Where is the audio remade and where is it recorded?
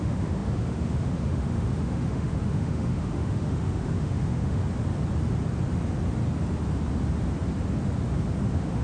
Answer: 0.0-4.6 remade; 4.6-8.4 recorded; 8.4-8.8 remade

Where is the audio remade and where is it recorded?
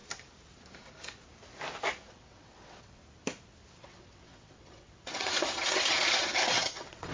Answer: 0.0-2.1 recorded; 2.1-3.0 remade; 3.0-3.7 recorded; 3.7-7.1 remade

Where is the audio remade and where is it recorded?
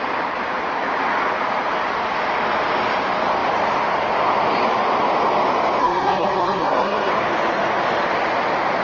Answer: 0.0-5.8 recorded; 5.8-7.1 remade; 7.1-8.8 recorded